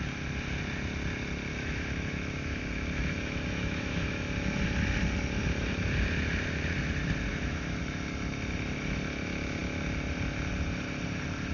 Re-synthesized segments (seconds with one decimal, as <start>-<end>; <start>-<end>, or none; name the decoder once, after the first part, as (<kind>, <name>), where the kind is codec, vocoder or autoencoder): 1.5-4.6 (autoencoder, DAC-VAE); 7.3-7.8